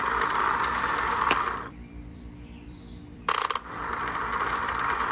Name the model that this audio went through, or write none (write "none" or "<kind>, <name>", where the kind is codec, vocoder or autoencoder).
vocoder, BigVGAN v2